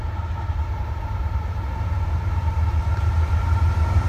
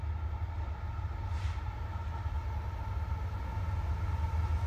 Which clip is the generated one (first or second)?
first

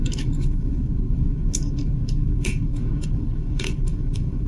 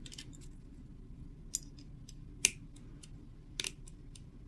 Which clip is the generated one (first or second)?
first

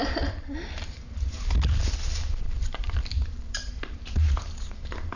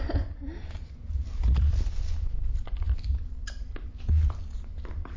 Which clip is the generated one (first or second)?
first